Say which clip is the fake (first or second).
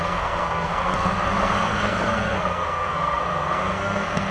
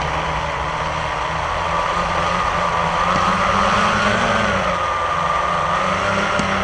first